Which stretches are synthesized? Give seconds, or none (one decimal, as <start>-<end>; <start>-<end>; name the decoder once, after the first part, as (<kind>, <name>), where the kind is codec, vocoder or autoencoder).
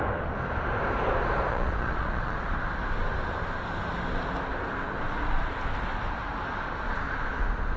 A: 1.5-2.5 (vocoder, Vocos)